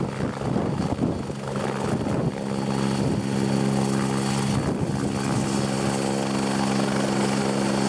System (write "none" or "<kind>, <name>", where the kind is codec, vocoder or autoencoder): none